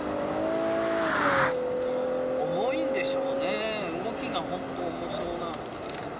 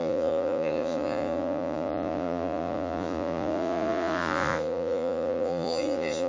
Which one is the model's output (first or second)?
second